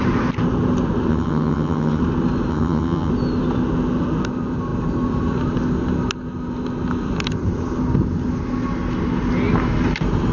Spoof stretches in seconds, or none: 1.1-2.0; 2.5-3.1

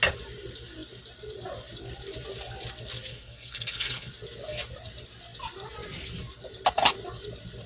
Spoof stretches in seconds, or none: 3.1-4.1